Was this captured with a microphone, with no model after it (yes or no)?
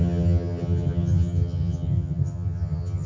no